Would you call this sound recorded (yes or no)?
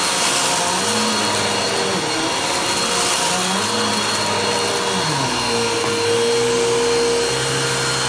yes